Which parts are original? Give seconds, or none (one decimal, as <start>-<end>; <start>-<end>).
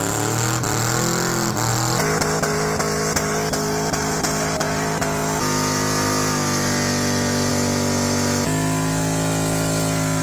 0.0-10.2